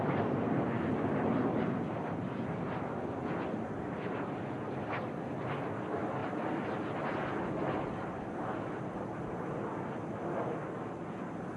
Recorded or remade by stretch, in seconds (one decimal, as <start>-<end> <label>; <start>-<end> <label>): 0.0-11.6 recorded